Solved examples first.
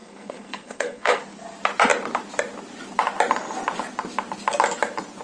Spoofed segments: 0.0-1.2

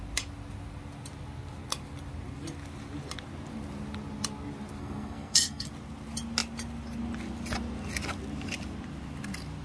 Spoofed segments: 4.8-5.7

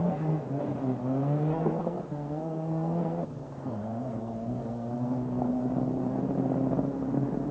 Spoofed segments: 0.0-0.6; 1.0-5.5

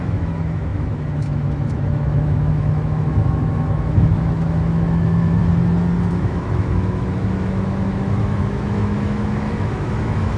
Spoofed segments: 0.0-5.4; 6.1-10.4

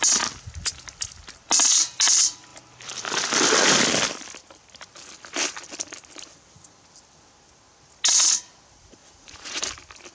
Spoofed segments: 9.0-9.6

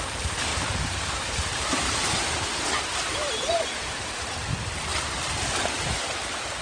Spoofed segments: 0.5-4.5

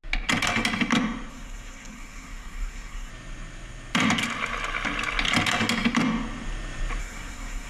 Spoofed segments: 1.3-3.1; 7.0-7.7

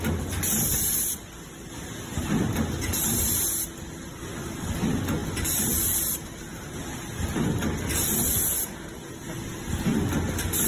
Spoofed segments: none